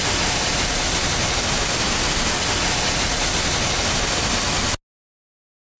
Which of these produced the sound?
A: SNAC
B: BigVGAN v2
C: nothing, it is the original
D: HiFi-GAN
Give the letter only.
C